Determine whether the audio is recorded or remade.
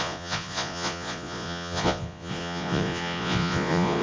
remade